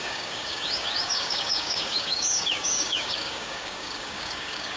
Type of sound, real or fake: fake